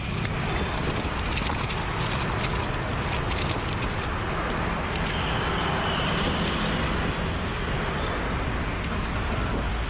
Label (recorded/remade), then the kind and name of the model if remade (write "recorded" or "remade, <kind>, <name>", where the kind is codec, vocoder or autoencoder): remade, vocoder, BigVGAN v2